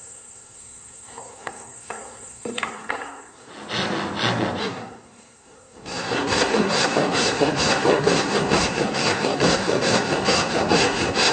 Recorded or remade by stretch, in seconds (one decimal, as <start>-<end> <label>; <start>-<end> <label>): 0.0-3.5 remade; 3.5-4.6 recorded; 4.6-11.3 remade